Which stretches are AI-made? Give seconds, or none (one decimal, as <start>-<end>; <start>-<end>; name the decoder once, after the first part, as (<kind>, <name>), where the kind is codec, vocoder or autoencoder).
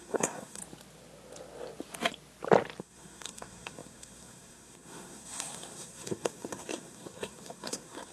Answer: 0.0-0.6 (codec, SNAC); 2.8-8.1